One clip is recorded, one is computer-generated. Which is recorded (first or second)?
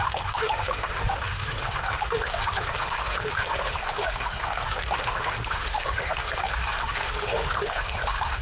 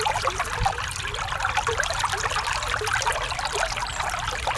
second